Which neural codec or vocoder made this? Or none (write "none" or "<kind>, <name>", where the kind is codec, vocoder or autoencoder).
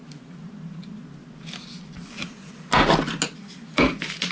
none